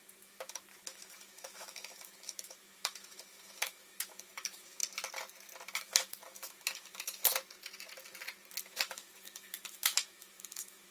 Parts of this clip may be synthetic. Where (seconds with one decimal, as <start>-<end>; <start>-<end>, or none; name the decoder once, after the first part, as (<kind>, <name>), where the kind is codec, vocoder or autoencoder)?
0.0-4.8 (autoencoder, DAC-VAE); 5.7-7.2; 8.6-10.9